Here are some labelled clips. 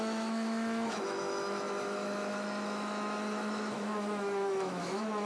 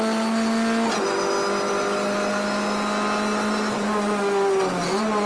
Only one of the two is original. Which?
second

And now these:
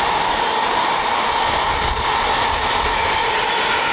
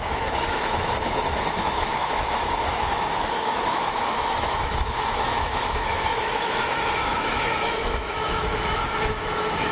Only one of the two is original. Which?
first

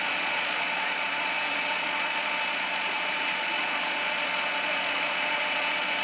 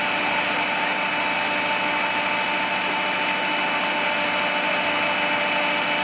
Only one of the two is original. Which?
second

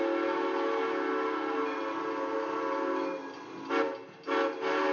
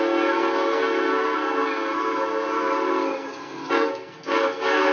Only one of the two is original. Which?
first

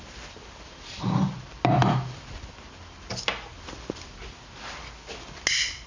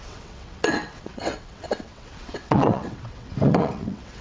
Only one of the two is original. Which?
first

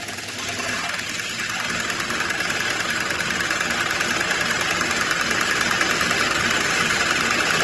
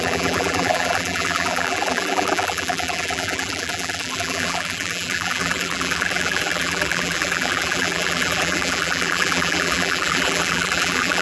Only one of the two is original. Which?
first